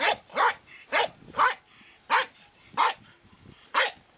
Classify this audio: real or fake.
real